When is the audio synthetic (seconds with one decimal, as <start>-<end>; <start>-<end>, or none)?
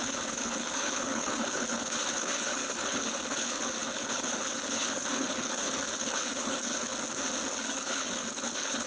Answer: 0.0-6.9; 7.5-8.9